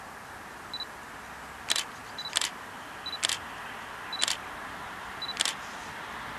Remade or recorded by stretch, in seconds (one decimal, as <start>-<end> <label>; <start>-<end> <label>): 0.0-6.4 recorded